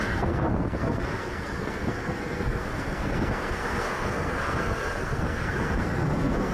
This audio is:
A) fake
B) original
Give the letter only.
A